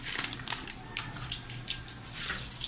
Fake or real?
real